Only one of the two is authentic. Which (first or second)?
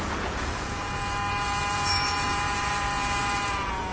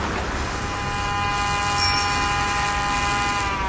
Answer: second